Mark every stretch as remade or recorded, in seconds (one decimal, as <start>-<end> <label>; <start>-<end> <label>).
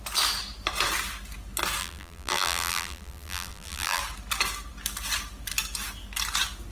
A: 0.0-1.8 recorded; 1.8-4.0 remade; 4.0-6.7 recorded